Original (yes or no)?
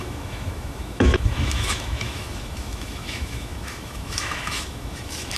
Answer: no